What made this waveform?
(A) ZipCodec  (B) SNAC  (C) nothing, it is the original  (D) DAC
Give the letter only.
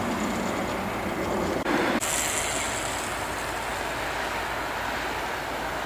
C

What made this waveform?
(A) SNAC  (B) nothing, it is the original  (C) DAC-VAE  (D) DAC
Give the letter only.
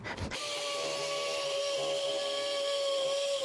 B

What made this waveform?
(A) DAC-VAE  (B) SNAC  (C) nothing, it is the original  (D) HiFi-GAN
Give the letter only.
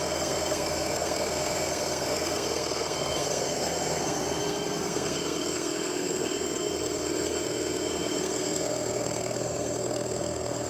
B